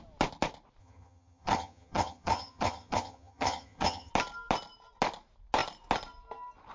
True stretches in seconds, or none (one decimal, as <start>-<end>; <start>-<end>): 0.0-0.8; 4.1-6.7